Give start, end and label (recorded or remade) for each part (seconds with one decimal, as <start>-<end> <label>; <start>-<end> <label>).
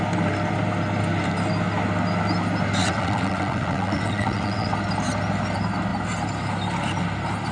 0.0-2.8 recorded; 2.8-4.7 remade; 4.7-7.5 recorded